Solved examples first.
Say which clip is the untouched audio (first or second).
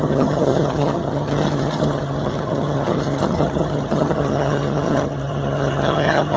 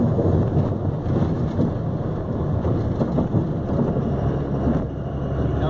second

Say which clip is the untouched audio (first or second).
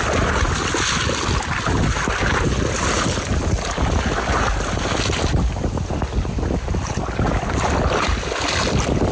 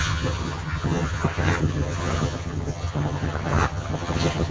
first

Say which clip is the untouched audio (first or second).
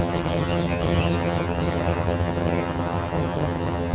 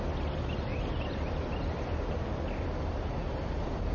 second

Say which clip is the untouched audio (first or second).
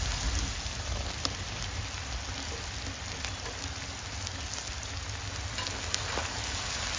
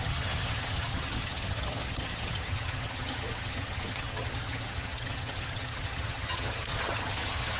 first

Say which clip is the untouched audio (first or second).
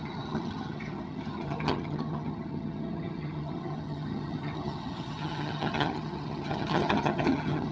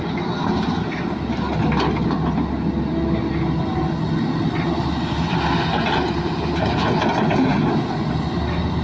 second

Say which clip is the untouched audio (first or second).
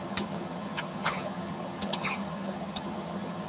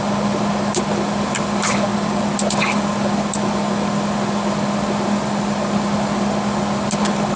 second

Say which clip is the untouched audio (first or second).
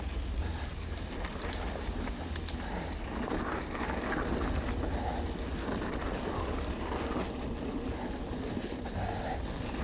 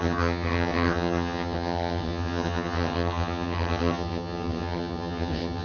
first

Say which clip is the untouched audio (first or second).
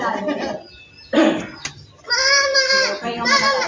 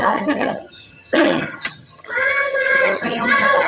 first